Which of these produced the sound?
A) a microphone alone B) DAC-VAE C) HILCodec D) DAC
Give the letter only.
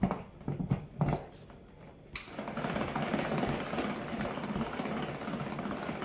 A